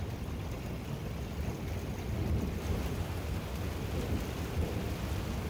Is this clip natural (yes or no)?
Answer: yes